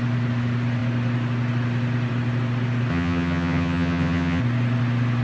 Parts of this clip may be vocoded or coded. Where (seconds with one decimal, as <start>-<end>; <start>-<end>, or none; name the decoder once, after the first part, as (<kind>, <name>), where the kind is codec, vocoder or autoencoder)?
2.9-4.4 (vocoder, HiFi-GAN)